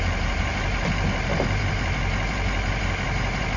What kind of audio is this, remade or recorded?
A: remade